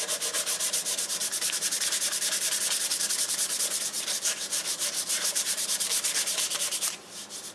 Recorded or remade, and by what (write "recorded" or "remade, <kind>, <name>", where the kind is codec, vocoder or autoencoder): remade, vocoder, BigVGAN v2